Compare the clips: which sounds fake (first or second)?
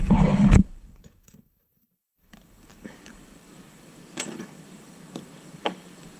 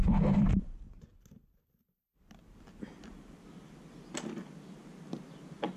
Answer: first